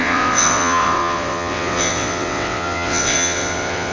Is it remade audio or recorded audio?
remade